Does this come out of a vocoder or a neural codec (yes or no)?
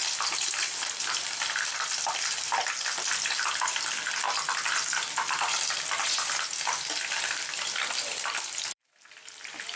no